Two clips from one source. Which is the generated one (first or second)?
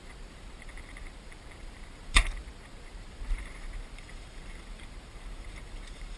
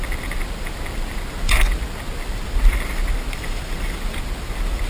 first